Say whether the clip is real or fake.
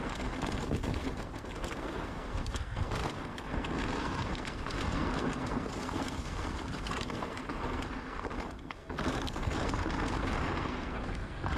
fake